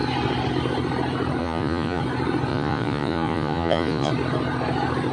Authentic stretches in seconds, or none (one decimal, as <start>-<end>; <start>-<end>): 0.0-1.4; 2.0-2.5; 4.1-5.1